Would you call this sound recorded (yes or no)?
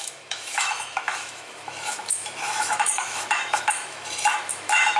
no